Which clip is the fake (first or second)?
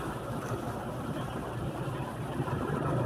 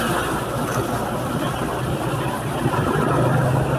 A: first